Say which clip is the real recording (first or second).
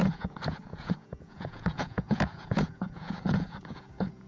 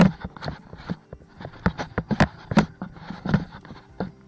second